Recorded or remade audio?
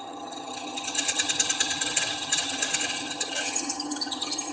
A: remade